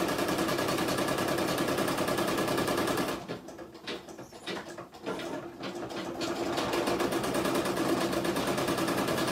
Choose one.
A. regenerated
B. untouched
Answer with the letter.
B